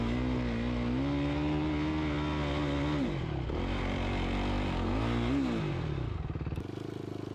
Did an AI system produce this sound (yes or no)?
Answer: no